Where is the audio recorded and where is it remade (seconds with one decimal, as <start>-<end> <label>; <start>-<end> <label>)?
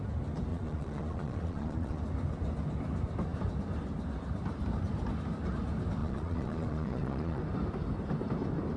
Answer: 0.0-0.5 recorded; 0.5-2.0 remade; 2.0-6.0 recorded; 6.0-7.4 remade; 7.4-8.8 recorded